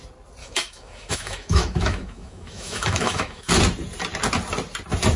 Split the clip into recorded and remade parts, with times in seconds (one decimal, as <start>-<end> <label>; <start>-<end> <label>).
0.0-0.4 recorded; 0.4-3.5 remade; 3.5-5.2 recorded